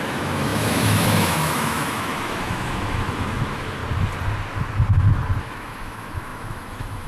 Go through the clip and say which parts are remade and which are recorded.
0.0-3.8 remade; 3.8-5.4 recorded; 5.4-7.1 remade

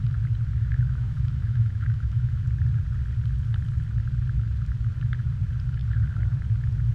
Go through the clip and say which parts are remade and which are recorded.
0.0-0.7 recorded; 0.7-2.4 remade; 2.4-6.9 recorded